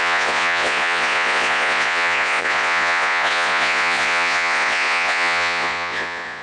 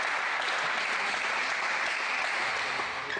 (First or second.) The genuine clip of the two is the second